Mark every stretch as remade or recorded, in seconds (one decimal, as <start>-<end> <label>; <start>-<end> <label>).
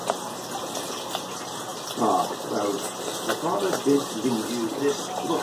0.0-5.4 recorded